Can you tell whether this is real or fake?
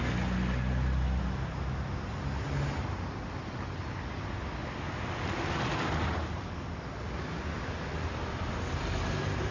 real